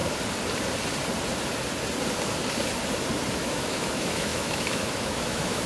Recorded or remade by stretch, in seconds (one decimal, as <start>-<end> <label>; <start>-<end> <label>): 0.0-3.3 recorded; 3.3-5.7 remade

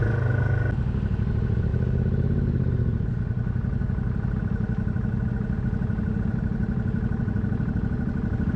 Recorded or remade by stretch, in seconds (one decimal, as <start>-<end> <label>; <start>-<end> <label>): 0.0-8.6 recorded

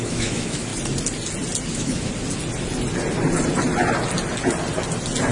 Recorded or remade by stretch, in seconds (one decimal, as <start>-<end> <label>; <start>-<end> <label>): 0.0-0.7 remade; 0.7-1.7 recorded; 1.7-2.1 remade; 2.1-5.3 recorded

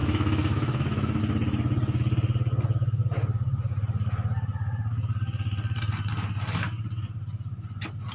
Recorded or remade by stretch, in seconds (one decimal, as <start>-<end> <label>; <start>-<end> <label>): 0.0-1.2 remade; 1.2-8.1 recorded

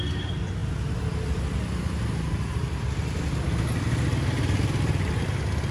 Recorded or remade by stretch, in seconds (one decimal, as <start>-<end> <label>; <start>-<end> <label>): 0.0-5.7 recorded

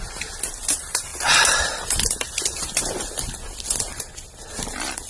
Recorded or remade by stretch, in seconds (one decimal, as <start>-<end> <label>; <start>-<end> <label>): 0.0-5.1 recorded

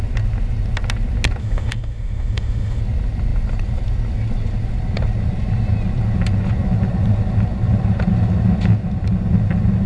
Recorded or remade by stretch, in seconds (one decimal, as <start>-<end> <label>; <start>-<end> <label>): 0.0-1.4 recorded; 1.4-2.8 remade; 2.8-9.9 recorded

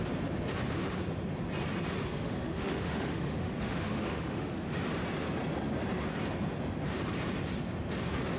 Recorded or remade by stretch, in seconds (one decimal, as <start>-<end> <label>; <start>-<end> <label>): 0.0-2.1 recorded; 2.1-4.5 remade; 4.5-8.4 recorded